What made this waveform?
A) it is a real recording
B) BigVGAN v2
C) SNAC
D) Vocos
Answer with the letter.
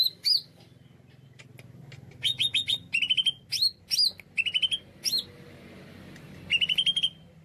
A